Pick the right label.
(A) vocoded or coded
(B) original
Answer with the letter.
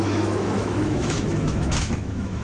A